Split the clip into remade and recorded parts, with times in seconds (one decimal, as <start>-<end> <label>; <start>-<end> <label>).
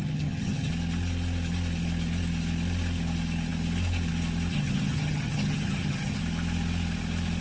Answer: 0.0-0.7 remade; 0.7-4.5 recorded; 4.5-6.2 remade; 6.2-7.4 recorded